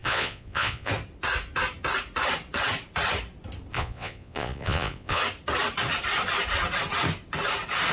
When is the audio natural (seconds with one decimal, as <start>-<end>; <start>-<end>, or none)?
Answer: 0.9-3.7; 5.2-7.9